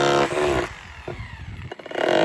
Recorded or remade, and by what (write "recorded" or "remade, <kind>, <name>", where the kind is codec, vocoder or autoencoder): recorded